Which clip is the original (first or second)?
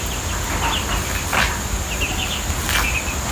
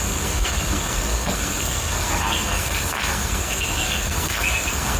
first